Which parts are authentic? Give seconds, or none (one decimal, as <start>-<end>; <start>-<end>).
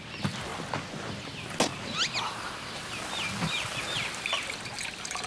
0.0-5.3